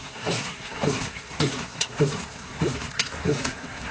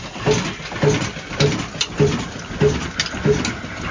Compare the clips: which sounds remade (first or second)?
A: first